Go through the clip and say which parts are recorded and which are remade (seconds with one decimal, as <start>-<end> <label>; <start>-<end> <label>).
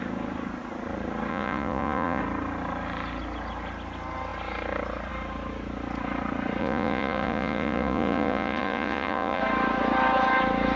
0.0-1.3 recorded; 1.3-2.2 remade; 2.2-6.6 recorded; 6.6-9.4 remade; 9.4-10.8 recorded